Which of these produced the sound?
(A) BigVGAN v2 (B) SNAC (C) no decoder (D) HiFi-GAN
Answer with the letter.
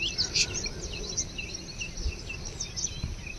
C